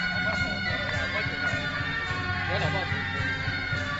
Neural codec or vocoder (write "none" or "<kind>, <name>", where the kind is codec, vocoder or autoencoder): none